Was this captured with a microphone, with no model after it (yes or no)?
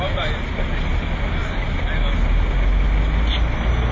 yes